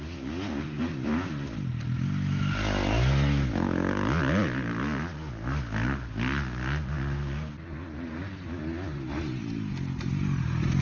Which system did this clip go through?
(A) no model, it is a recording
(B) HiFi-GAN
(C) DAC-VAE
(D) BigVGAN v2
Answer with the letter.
A